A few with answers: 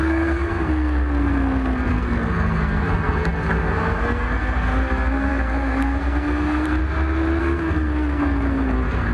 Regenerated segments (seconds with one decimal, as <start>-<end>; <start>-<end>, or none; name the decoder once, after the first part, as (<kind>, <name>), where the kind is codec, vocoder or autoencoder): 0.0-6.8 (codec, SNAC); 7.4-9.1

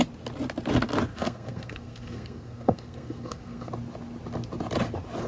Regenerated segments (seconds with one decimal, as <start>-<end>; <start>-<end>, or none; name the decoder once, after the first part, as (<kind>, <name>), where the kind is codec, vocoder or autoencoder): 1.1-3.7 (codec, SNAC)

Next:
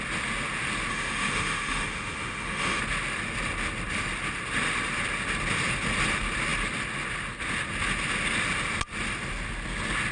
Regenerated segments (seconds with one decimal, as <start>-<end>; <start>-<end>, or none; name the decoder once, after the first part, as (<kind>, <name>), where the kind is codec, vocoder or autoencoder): 0.9-2.8 (autoencoder, DAC-VAE)

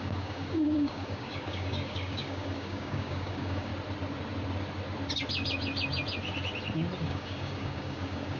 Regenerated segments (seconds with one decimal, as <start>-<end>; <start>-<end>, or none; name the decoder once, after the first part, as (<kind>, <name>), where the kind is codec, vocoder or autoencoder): 0.0-3.7 (codec, DAC); 7.0-8.4

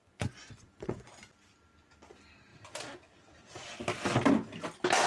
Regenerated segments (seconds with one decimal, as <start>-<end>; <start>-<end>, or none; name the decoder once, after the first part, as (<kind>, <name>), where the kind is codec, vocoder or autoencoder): 0.0-1.1 (vocoder, Vocos)

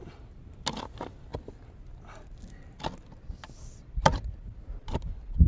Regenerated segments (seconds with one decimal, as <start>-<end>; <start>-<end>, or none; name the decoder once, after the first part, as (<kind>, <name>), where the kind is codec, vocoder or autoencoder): none

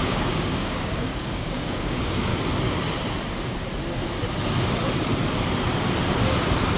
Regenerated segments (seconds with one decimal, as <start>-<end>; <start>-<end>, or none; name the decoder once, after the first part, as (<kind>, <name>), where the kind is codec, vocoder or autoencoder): 0.0-2.3 (codec, DAC)

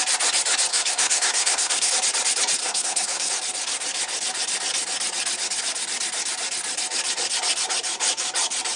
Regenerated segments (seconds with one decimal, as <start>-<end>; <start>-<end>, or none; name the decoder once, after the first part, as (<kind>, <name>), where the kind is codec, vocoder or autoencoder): 0.7-1.9 (codec, SNAC); 2.6-3.3